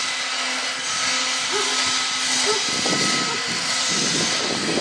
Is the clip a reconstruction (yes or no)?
no